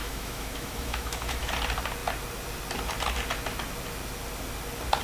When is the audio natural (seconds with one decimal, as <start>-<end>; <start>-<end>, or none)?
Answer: 1.5-5.0